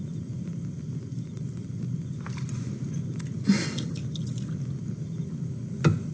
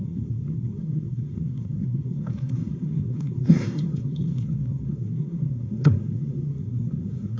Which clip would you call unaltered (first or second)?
first